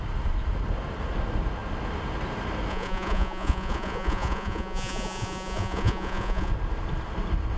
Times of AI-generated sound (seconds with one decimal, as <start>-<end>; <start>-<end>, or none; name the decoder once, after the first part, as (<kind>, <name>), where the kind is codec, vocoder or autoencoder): 2.7-6.5 (vocoder, Vocos)